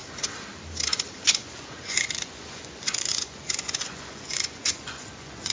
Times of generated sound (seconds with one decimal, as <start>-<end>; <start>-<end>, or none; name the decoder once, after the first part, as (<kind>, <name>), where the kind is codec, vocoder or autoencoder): 1.1-5.5 (vocoder, Vocos)

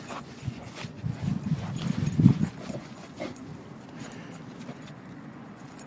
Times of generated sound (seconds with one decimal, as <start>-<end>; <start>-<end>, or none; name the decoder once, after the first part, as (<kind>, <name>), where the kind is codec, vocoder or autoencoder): 0.0-1.3 (vocoder, Vocos); 2.3-3.5; 4.7-5.9